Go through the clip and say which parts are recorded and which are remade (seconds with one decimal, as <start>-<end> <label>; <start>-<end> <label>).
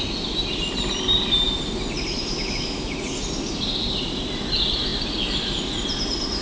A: 0.0-2.3 recorded; 2.3-3.0 remade; 3.0-6.4 recorded